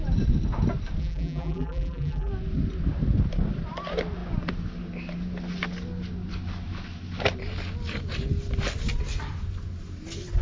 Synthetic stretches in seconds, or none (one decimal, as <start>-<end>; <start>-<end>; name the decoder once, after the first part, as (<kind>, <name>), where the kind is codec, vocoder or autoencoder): 1.0-2.3 (vocoder, BigVGAN v2)